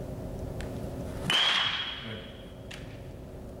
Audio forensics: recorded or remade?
recorded